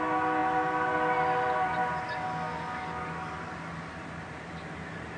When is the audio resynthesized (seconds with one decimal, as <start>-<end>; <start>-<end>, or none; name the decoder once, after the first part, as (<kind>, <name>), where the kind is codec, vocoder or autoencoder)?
none